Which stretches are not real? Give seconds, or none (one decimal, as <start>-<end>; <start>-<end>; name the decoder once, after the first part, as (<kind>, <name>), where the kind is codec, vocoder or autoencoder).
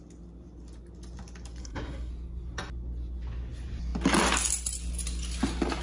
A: 1.6-2.1 (codec, SNAC)